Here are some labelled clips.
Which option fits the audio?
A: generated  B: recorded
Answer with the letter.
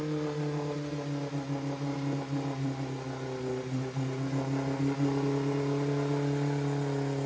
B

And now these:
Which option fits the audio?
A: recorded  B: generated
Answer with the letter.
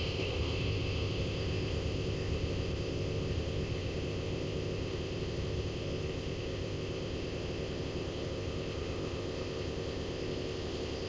B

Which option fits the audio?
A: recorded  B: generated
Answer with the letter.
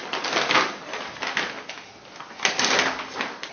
A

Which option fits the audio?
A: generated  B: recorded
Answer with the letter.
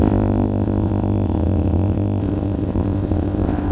A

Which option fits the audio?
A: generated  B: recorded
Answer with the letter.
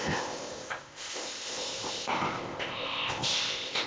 A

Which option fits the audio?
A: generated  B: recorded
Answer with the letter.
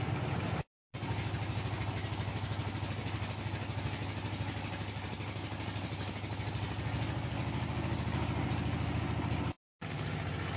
B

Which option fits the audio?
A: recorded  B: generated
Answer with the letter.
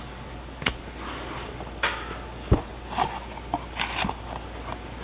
A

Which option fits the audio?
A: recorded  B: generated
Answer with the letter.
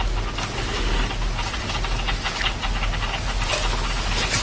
A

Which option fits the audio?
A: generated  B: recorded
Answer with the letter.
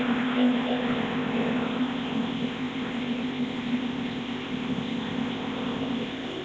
A